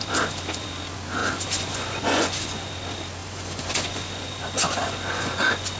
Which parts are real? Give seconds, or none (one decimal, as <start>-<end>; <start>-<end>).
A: 0.0-1.2; 2.7-3.2